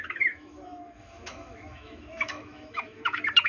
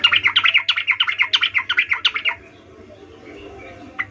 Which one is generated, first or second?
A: first